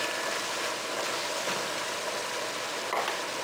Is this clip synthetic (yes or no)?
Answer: no